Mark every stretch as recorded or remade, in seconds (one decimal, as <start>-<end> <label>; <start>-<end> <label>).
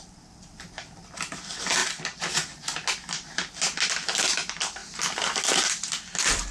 0.0-6.5 recorded